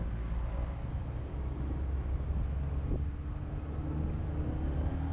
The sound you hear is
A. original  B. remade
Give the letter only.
A